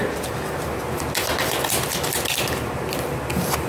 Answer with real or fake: real